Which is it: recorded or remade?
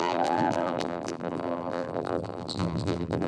remade